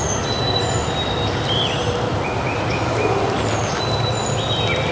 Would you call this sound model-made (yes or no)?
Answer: no